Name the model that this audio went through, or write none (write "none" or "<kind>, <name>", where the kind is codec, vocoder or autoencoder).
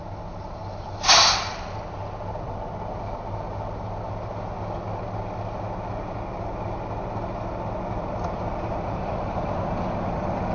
none